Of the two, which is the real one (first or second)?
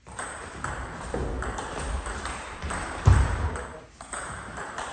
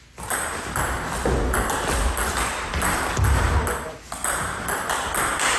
second